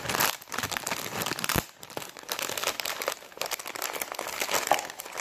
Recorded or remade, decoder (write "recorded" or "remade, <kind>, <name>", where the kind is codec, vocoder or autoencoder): recorded